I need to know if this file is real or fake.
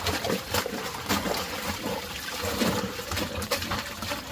fake